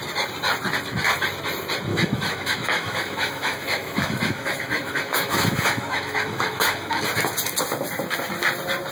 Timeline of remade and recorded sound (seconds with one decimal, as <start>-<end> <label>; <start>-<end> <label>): 0.0-1.9 recorded; 1.9-7.0 remade; 7.0-8.9 recorded